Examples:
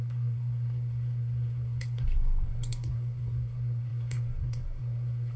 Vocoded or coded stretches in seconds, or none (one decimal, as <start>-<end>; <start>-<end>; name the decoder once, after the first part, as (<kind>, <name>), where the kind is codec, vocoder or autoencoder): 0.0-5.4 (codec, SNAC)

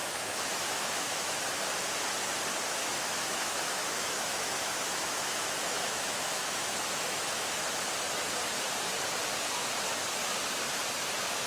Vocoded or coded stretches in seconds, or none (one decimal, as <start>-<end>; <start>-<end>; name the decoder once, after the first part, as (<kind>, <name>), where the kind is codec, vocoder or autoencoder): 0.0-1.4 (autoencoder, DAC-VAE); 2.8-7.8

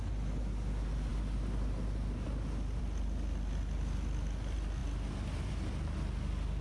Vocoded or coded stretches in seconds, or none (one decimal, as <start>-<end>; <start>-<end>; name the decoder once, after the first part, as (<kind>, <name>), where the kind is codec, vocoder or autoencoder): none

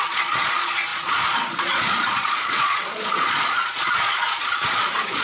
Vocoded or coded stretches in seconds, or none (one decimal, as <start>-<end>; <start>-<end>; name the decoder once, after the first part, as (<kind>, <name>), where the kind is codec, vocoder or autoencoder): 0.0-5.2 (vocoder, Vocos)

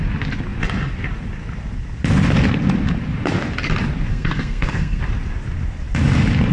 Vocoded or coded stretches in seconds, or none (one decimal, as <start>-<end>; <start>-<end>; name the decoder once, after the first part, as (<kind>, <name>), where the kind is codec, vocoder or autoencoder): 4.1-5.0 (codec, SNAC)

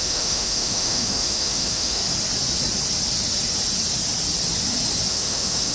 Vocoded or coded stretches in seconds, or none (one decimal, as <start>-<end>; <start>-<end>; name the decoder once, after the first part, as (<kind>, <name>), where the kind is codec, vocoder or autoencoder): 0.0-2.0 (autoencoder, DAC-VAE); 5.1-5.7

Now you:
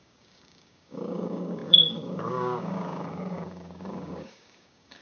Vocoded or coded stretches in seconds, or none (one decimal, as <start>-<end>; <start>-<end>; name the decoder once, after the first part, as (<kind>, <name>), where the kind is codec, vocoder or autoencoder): 0.0-5.0 (codec, DAC)

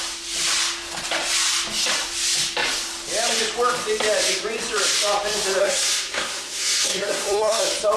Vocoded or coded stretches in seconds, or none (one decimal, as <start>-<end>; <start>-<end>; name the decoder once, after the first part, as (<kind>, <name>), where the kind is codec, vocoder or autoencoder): 5.6-7.6 (codec, SNAC)